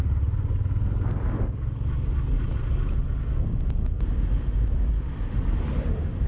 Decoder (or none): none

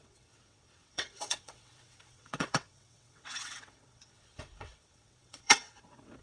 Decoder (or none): vocoder, WaveNeXt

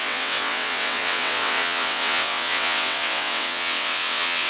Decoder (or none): vocoder, WaveNeXt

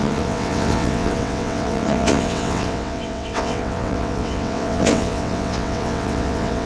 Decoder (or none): vocoder, WaveNeXt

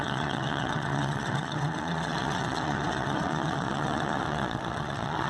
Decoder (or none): vocoder, WaveNeXt